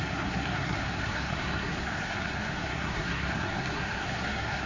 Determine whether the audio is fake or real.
fake